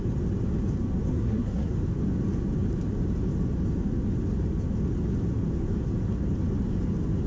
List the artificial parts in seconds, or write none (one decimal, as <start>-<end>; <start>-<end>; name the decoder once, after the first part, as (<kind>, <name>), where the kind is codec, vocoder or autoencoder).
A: 1.1-1.7 (codec, SNAC)